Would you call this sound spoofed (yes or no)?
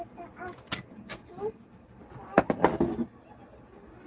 no